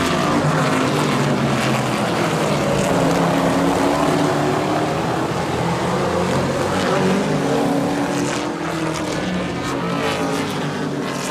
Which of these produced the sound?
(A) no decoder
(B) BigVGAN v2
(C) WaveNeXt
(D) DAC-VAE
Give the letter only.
A